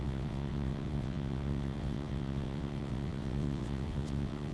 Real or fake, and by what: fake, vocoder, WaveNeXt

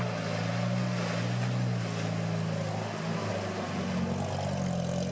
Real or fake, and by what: real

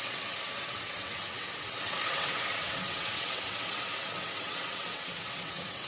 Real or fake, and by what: fake, vocoder, WaveNeXt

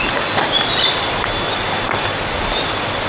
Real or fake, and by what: real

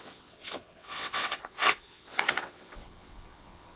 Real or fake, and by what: fake, vocoder, WaveNeXt